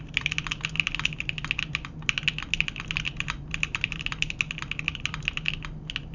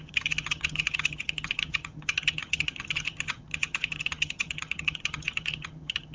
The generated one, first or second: second